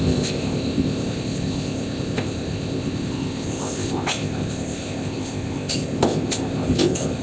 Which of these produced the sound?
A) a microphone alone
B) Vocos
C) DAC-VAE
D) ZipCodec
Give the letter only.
D